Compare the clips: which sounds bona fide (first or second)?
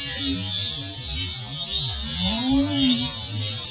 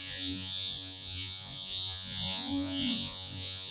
first